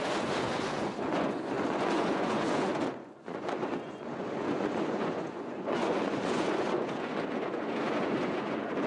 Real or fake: fake